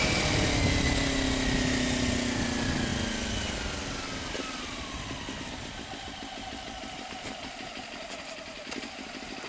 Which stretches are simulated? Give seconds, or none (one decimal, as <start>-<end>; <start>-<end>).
none